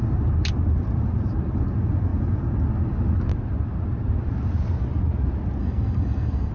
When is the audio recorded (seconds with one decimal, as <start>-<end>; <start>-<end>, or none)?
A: 0.0-5.6